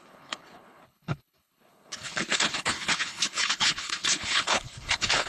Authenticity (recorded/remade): remade